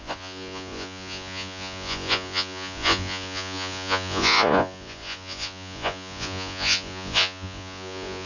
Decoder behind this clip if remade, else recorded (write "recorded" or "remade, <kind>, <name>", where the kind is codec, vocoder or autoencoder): remade, vocoder, Vocos